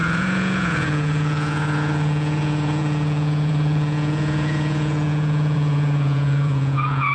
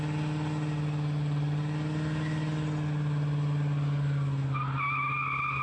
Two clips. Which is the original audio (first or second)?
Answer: second